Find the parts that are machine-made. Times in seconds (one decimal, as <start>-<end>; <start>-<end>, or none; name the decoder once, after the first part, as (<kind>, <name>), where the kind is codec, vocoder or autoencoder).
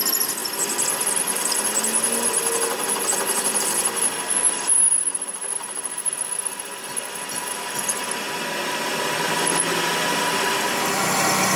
none